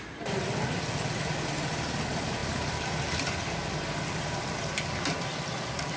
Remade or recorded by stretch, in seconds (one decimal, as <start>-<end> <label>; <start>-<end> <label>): 0.0-2.4 recorded; 2.4-6.0 remade